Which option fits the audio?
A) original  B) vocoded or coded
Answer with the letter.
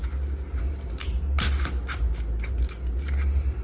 A